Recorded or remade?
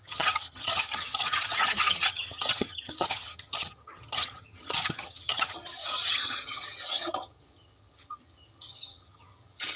remade